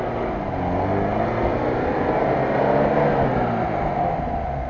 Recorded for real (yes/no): yes